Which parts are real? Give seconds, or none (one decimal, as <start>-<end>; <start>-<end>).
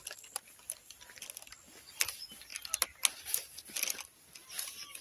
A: 0.0-5.0